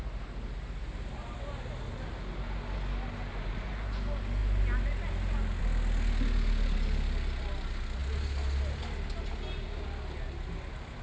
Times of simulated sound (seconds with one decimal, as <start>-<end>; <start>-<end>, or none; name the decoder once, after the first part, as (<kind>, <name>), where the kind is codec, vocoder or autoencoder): none

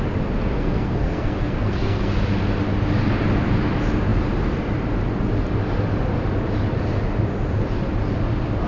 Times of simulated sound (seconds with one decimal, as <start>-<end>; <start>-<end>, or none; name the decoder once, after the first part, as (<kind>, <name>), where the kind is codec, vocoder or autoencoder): 0.5-2.1 (codec, SNAC)

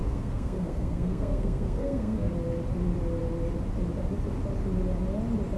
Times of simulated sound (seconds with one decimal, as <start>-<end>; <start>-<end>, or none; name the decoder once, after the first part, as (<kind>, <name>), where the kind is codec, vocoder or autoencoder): 0.0-2.3 (codec, SNAC)

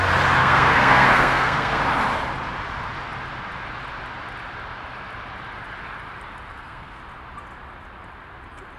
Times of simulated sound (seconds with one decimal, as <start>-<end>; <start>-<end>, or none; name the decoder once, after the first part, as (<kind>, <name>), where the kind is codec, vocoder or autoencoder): 0.4-1.8 (codec, SNAC); 6.5-7.0

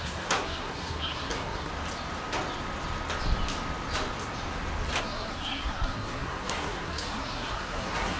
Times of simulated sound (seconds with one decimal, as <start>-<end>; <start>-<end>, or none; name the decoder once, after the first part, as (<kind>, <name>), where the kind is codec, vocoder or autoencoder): 0.0-1.7 (codec, SNAC); 5.0-8.2

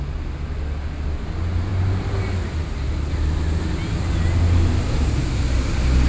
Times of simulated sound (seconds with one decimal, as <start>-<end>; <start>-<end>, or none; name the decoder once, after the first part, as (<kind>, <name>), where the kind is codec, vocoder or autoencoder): none